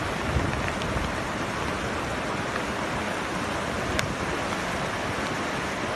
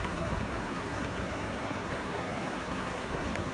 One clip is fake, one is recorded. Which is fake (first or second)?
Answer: second